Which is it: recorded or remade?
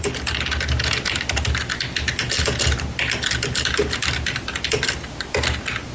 recorded